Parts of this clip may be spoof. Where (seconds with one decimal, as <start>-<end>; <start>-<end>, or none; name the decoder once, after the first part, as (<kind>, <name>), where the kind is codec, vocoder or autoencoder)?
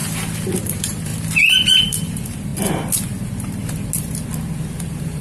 0.6-1.1 (vocoder, BigVGAN v2); 1.7-2.5; 4.8-5.2